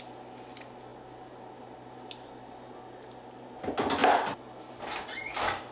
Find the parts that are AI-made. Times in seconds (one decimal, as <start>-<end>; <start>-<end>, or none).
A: none